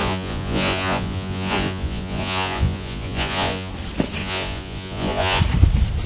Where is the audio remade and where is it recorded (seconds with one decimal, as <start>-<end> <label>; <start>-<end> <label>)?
0.0-3.7 remade; 3.7-4.2 recorded; 4.2-5.4 remade; 5.4-6.1 recorded